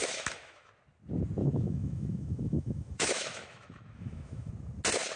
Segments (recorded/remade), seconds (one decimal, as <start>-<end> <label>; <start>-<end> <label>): 0.0-0.7 remade; 0.7-1.4 recorded; 1.4-4.5 remade; 4.5-5.2 recorded